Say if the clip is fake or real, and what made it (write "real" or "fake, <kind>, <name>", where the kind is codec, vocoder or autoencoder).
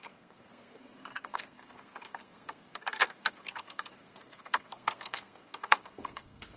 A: fake, codec, SNAC